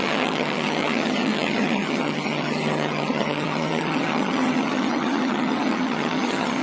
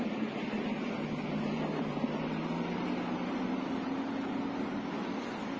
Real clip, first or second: second